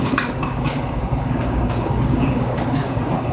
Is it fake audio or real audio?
fake